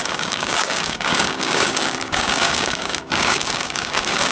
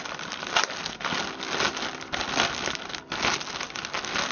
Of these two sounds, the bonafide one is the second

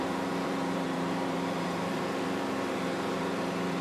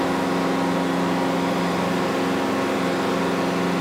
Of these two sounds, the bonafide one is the second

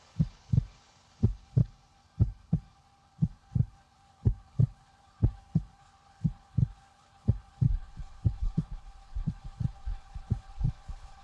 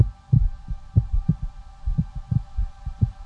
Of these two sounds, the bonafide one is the second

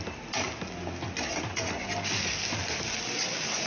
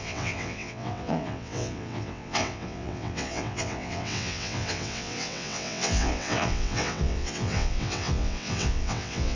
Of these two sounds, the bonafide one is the first